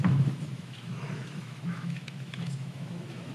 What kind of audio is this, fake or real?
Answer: fake